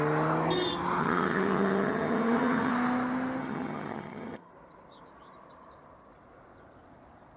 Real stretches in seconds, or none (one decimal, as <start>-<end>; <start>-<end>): 0.0-1.0; 2.7-3.4; 4.5-7.4